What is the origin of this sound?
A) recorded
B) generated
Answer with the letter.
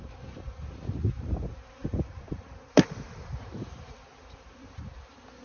B